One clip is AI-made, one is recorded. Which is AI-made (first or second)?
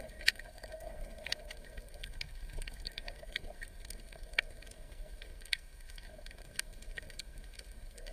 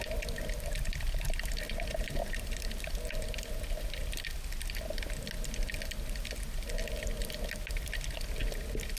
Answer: first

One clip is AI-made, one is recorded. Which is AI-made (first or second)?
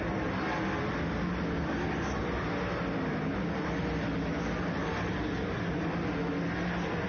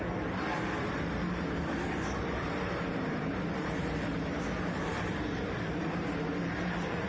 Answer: second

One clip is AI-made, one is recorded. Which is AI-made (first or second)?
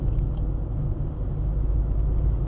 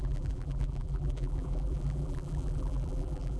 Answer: second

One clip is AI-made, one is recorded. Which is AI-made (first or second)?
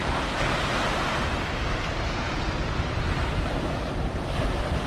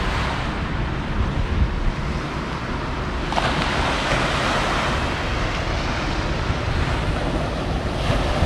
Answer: first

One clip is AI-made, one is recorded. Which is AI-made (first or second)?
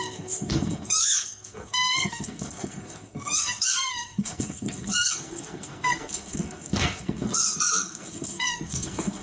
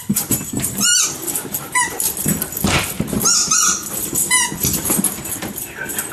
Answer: first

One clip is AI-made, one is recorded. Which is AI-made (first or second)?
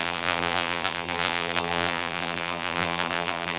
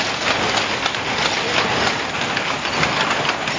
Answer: first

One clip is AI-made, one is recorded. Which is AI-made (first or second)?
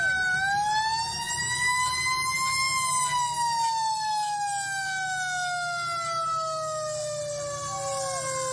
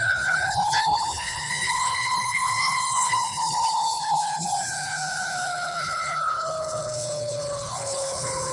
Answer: second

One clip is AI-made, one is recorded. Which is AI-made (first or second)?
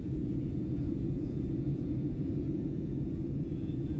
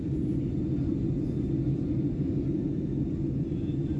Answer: first